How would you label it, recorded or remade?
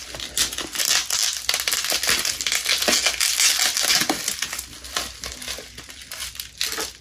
recorded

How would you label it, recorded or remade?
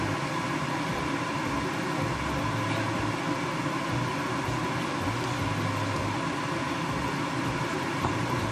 recorded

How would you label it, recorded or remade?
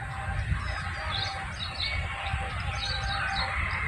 recorded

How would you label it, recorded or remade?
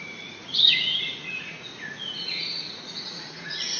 remade